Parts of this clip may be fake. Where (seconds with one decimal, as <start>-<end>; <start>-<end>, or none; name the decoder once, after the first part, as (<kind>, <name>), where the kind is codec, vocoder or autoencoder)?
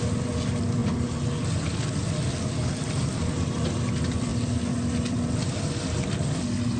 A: none